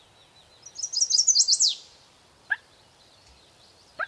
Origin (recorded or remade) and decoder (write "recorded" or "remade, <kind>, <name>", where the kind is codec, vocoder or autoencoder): recorded